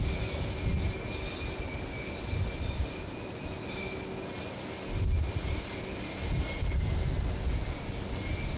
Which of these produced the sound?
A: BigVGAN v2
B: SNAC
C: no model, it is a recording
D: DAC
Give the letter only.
C